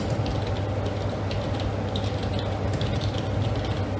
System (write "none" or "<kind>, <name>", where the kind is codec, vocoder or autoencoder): none